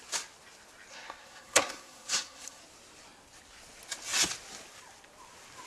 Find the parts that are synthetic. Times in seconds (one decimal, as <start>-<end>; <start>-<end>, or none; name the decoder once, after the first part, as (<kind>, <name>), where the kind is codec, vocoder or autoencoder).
0.9-2.6 (codec, SNAC)